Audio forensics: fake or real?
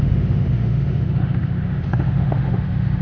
fake